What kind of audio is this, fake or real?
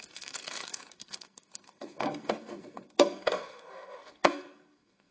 fake